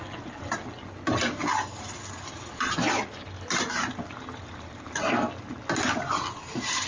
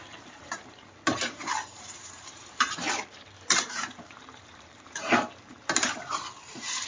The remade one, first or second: second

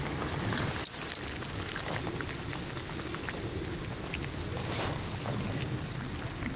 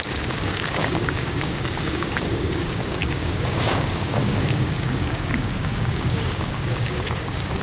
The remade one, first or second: second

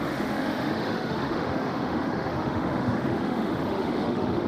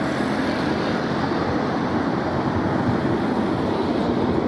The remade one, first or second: first